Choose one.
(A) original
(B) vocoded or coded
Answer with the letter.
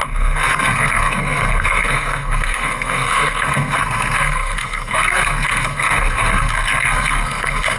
B